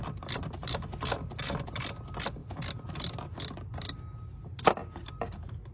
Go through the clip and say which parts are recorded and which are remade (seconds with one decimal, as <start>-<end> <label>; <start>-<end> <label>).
0.0-5.7 recorded